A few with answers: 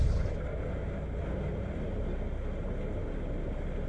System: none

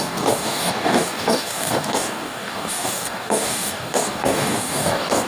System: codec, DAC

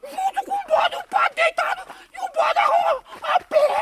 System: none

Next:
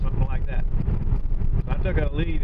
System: none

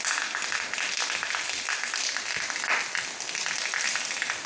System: none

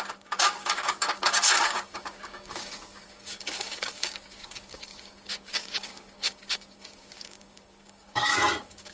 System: codec, DAC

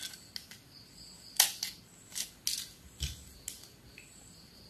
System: none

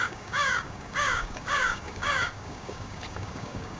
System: codec, DAC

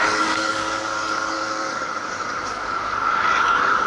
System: codec, DAC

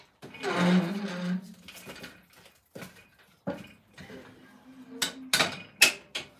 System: none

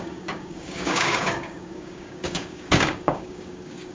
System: codec, DAC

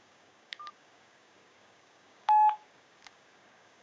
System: codec, DAC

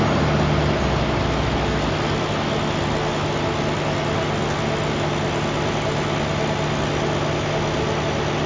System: none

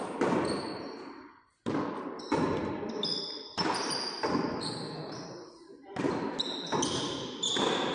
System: none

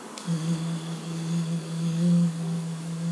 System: codec, DAC